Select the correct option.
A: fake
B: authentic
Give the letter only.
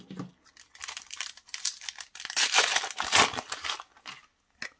B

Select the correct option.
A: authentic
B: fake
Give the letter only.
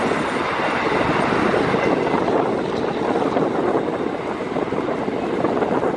A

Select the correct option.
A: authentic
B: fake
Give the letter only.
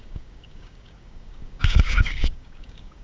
B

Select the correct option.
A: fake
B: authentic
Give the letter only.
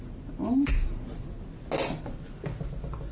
B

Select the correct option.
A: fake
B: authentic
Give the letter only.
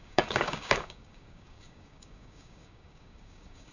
A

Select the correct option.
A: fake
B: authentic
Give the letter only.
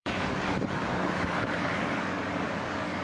A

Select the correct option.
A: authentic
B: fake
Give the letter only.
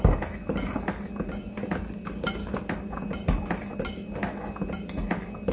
A